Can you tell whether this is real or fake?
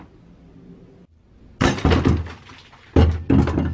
real